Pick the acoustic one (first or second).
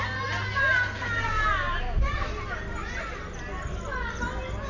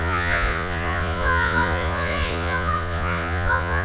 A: first